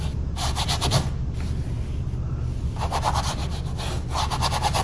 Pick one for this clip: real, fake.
real